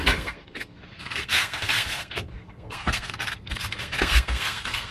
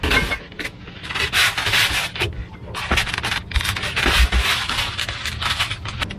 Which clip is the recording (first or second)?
second